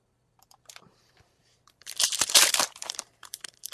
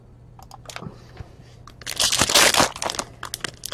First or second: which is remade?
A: first